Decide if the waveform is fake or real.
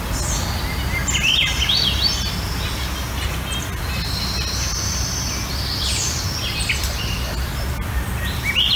real